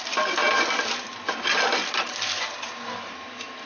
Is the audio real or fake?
real